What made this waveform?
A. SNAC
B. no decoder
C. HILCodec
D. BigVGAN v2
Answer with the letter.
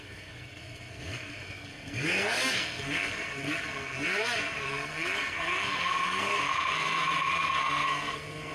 A